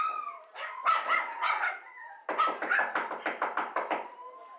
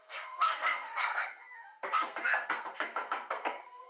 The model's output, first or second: second